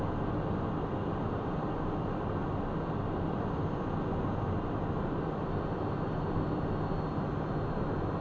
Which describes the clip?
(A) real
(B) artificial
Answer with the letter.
A